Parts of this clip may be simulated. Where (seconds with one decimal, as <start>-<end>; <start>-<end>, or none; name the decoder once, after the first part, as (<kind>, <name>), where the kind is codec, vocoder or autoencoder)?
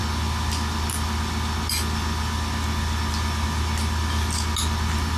none